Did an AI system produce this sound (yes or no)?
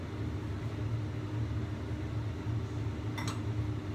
no